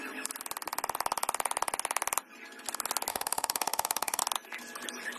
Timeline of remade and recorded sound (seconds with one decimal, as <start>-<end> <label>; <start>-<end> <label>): 0.0-3.1 recorded; 3.1-4.2 remade; 4.2-5.2 recorded